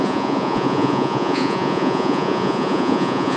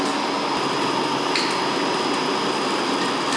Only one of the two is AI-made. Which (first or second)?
first